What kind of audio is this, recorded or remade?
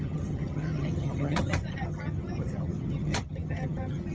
remade